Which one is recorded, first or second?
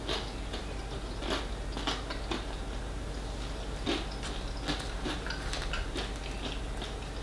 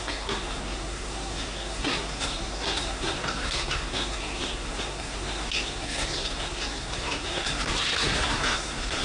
first